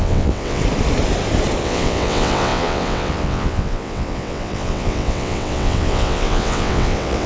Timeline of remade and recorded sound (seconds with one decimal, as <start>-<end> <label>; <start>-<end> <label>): 0.0-0.6 remade; 0.6-1.6 recorded; 1.6-7.3 remade